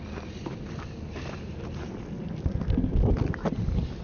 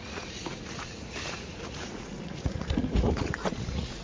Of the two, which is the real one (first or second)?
first